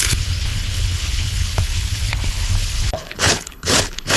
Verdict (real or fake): fake